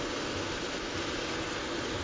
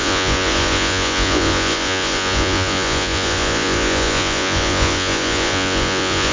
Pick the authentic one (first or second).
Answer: first